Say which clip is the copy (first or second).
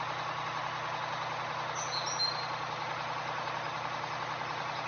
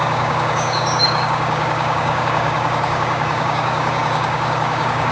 second